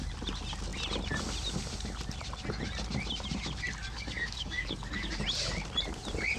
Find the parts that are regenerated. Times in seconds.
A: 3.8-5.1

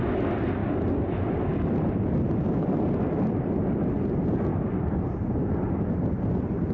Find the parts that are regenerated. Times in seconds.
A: 0.6-3.6; 4.5-5.3

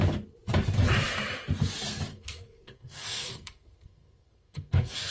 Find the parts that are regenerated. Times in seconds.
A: 2.1-5.1

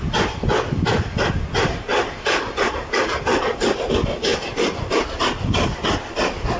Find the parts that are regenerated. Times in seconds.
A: none

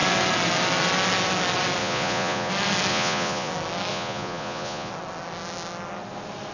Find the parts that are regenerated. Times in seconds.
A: 1.8-2.5; 2.9-3.5; 3.9-4.9

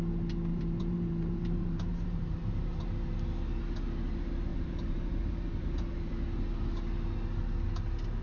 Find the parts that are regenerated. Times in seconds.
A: 0.5-2.9; 4.5-6.1

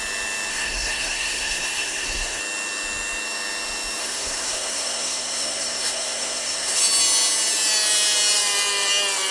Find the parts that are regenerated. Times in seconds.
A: 0.5-2.4; 4.0-6.8

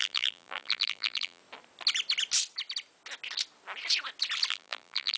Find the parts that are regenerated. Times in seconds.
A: 0.0-1.4; 4.5-5.2